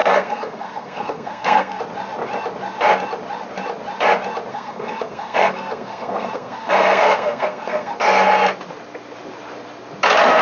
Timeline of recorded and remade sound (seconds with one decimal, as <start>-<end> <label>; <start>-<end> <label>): 0.0-1.8 remade; 1.8-4.5 recorded; 4.5-7.9 remade; 7.9-10.4 recorded